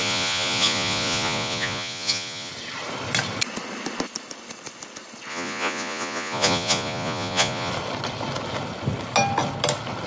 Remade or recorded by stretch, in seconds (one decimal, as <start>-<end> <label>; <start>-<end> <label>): 0.0-2.5 remade; 2.5-5.3 recorded; 5.3-7.7 remade; 7.7-10.1 recorded